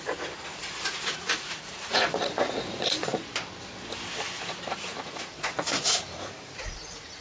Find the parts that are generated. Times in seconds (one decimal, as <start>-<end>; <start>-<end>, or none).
0.0-3.1; 4.7-7.2